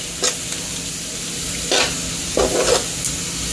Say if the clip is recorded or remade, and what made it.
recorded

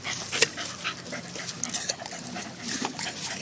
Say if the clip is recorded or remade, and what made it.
recorded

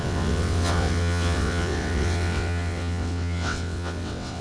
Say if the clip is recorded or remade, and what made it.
remade, vocoder, WaveNeXt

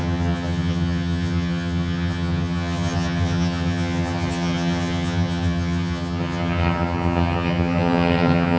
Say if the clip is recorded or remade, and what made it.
remade, vocoder, HiFi-GAN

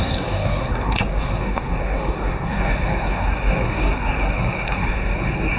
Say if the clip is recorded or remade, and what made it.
remade, codec, SNAC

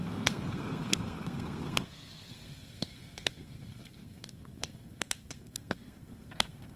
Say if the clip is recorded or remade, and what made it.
remade, codec, SNAC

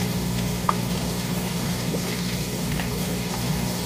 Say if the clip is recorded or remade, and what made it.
remade, codec, DAC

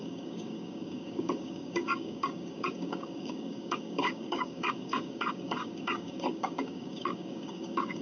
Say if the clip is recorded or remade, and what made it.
remade, codec, DAC